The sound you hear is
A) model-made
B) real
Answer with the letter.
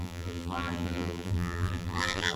A